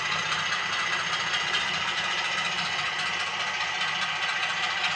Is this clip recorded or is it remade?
recorded